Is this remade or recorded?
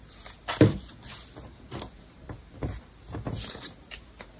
recorded